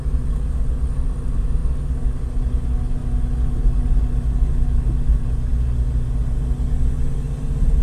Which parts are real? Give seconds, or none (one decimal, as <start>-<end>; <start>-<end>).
0.0-7.8